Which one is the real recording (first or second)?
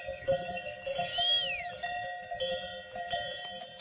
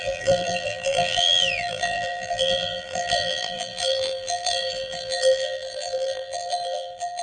first